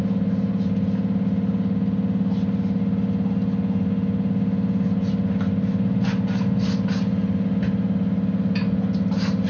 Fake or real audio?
real